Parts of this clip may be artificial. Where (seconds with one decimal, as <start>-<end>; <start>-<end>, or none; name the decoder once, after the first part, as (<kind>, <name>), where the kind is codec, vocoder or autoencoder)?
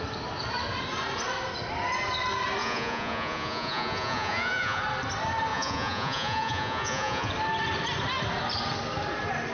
2.6-4.8 (vocoder, Vocos); 5.5-7.3